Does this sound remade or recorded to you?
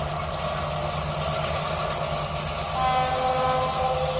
recorded